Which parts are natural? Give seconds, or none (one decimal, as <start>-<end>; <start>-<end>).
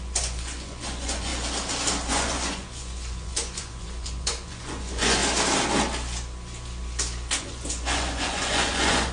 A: 1.3-2.1; 5.2-7.4